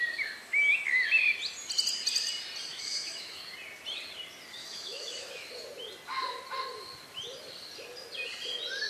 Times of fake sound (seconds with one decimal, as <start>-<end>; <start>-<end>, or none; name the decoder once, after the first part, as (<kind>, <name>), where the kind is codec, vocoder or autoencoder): 2.7-3.4 (autoencoder, DAC-VAE); 4.6-5.5